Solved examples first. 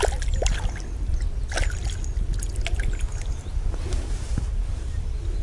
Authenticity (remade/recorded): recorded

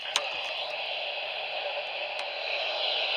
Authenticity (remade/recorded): recorded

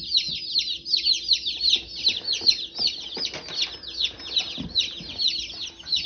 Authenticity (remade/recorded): recorded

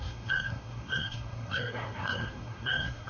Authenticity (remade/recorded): remade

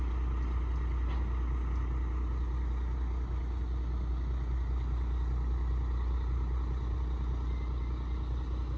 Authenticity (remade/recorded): recorded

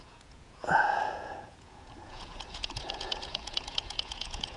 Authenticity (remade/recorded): remade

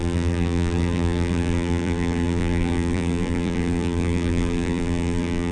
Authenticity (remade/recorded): remade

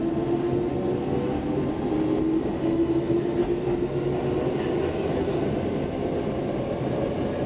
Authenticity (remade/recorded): recorded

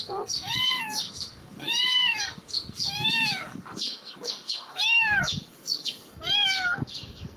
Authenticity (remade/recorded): remade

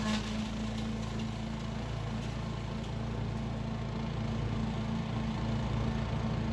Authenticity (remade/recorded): recorded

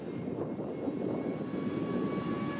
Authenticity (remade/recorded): recorded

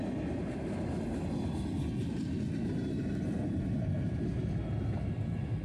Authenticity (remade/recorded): recorded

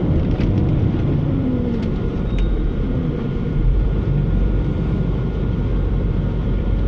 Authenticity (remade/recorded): remade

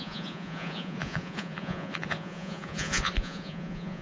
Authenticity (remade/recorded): remade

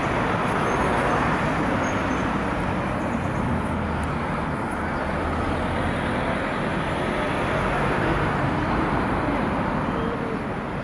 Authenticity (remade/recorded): recorded